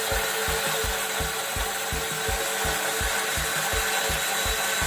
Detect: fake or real real